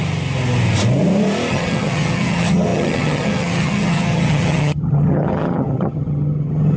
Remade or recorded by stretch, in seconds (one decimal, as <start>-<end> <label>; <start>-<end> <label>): 0.0-1.5 recorded; 1.5-6.8 remade